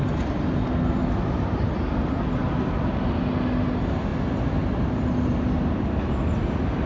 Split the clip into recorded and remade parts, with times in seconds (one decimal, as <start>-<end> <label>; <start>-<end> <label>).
0.0-6.9 recorded